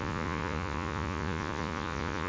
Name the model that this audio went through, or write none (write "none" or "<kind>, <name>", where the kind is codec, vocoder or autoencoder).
vocoder, Vocos